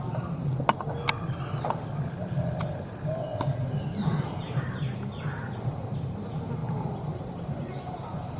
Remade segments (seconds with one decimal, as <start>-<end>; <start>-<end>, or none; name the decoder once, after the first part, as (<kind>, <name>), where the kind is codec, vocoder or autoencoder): 0.0-0.5 (vocoder, BigVGAN v2); 2.2-8.4